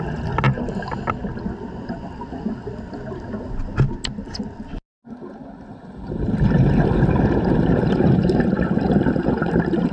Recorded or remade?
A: recorded